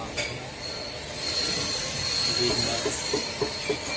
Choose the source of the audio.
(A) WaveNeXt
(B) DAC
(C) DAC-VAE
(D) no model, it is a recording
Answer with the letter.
D